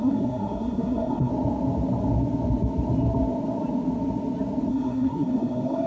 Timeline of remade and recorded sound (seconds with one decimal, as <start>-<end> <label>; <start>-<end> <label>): 0.0-1.3 remade; 1.3-4.7 recorded; 4.7-5.9 remade